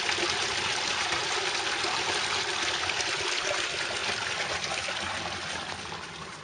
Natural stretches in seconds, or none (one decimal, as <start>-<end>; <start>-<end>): 0.0-1.2; 2.2-4.0; 4.9-6.4